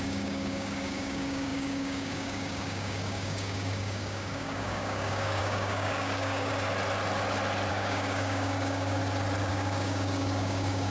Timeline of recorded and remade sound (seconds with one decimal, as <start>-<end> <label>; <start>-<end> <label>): 0.0-6.5 remade; 6.5-7.7 recorded; 7.7-9.0 remade; 9.0-9.5 recorded; 9.5-10.9 remade